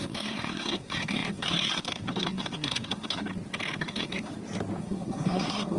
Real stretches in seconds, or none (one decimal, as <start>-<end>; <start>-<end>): 3.3-3.8; 4.3-4.8